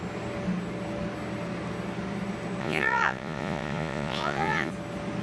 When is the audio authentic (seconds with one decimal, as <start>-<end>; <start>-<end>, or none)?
0.0-2.6; 4.7-5.2